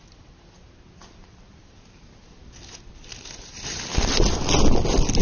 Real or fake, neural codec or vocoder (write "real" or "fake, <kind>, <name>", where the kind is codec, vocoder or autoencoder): real